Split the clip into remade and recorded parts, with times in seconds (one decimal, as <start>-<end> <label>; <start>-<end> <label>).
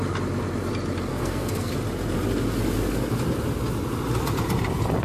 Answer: 0.0-1.1 recorded; 1.1-1.7 remade; 1.7-5.0 recorded